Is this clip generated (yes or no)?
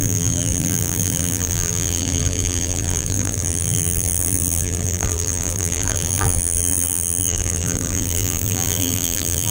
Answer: yes